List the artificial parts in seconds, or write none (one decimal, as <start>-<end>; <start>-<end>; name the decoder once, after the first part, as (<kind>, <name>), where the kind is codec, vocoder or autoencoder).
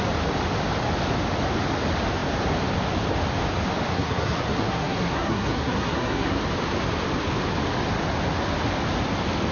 3.9-6.4 (codec, SNAC)